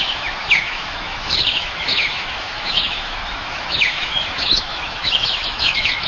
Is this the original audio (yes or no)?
no